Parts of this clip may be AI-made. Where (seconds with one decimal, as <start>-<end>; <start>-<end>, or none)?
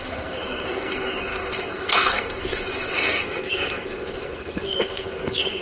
0.0-5.6